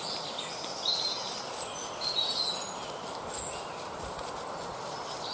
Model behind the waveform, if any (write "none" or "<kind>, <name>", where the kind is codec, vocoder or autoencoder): none